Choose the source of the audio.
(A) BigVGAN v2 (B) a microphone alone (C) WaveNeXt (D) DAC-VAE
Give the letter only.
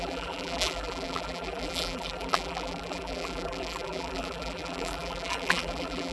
A